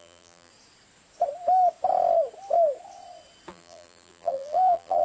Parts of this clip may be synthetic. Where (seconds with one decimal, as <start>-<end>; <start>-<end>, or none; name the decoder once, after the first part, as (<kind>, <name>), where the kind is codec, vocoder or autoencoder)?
0.0-0.5 (vocoder, BigVGAN v2); 3.5-5.0